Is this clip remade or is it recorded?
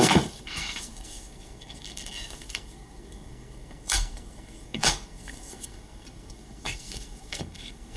remade